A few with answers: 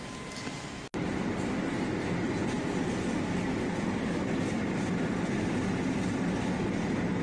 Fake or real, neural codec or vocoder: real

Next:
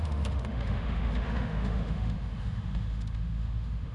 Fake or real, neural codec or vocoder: fake, autoencoder, DAC-VAE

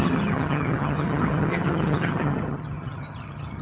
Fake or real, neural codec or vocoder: fake, vocoder, HiFi-GAN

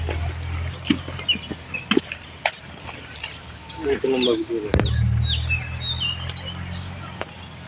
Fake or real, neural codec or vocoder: real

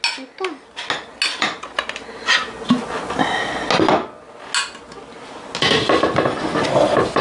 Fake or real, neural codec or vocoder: real